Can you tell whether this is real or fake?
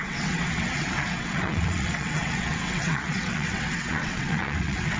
fake